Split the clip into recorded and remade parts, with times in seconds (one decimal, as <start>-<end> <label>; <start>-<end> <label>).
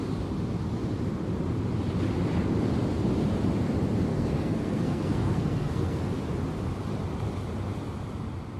0.0-4.1 recorded; 4.1-6.0 remade; 6.0-8.6 recorded